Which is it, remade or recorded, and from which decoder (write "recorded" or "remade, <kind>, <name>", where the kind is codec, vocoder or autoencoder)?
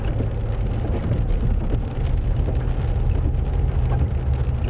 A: recorded